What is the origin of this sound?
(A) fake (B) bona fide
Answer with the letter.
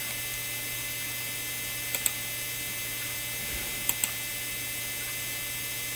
B